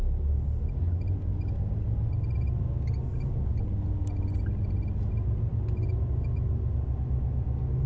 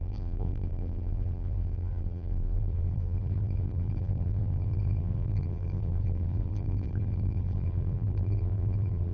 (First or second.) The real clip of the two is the first